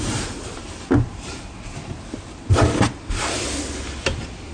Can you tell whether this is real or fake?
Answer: real